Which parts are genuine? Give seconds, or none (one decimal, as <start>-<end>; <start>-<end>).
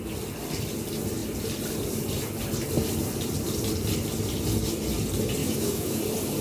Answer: 0.0-5.4; 6.0-6.4